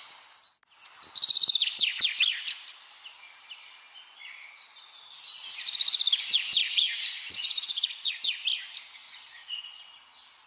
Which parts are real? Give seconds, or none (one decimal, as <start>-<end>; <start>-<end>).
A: 0.0-6.6; 8.2-9.0; 9.7-10.5